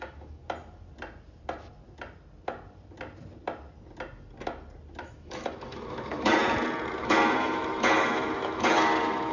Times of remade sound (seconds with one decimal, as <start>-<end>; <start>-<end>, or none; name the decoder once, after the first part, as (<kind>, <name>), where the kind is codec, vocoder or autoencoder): 0.0-0.4 (autoencoder, DAC-VAE); 5.0-6.4; 7.0-9.3